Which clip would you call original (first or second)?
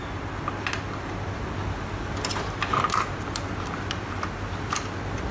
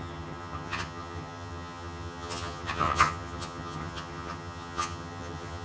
first